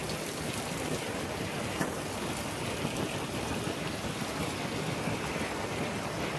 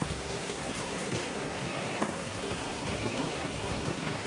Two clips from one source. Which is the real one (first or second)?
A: first